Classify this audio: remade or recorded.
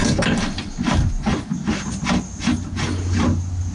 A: recorded